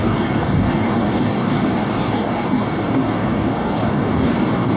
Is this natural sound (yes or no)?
no